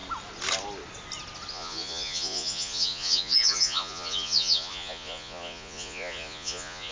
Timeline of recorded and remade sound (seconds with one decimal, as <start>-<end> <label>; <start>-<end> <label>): 0.0-1.5 recorded; 1.5-6.9 remade